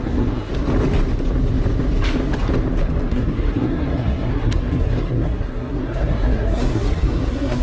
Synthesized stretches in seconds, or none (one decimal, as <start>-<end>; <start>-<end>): 0.0-0.5; 3.1-7.6